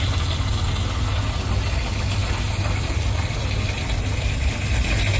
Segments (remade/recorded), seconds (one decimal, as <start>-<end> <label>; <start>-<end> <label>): 0.0-5.2 recorded